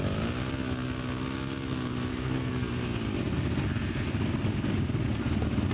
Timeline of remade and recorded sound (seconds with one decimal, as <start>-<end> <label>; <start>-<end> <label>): 0.0-2.1 recorded; 2.1-2.7 remade; 2.7-5.7 recorded